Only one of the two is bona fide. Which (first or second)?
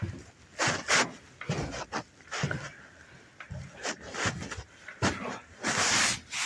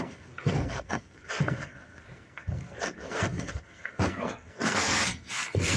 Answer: first